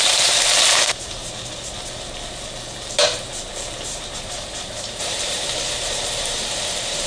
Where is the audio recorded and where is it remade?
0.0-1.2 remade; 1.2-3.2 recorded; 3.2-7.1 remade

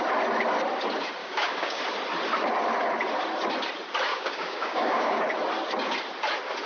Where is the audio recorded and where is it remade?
0.0-1.2 recorded; 1.2-1.8 remade; 1.8-4.1 recorded; 4.1-5.2 remade; 5.2-6.7 recorded

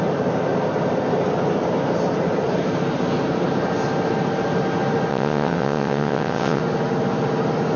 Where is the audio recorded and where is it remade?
0.0-5.1 recorded; 5.1-6.6 remade; 6.6-7.8 recorded

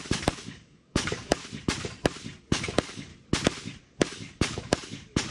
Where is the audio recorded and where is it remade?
0.0-1.4 remade; 1.4-2.4 recorded; 2.4-3.1 remade; 3.1-3.8 recorded; 3.8-5.3 remade

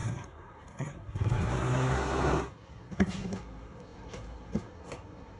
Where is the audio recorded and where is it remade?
0.0-5.4 remade